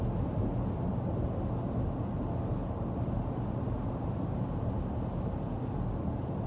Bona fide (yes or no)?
yes